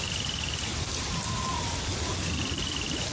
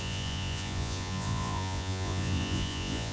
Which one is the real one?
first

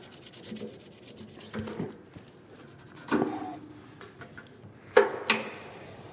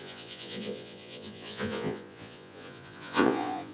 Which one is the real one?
first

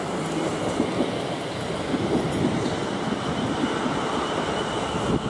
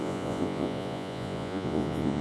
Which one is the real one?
first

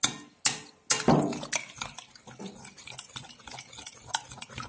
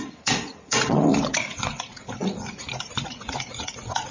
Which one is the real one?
first